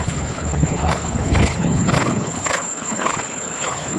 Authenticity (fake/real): fake